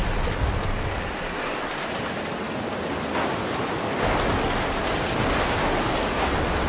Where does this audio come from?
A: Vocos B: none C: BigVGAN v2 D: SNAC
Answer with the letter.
B